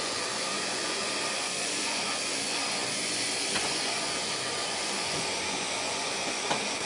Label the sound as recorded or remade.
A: remade